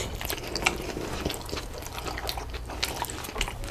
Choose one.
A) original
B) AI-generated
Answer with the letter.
A